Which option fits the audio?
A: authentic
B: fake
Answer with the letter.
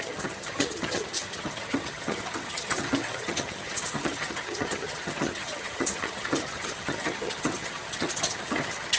B